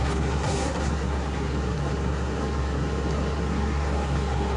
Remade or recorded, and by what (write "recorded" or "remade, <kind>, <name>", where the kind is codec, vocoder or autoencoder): remade, codec, SNAC